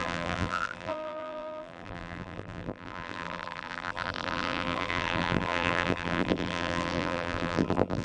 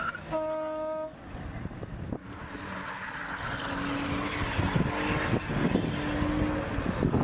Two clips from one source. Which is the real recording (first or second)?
second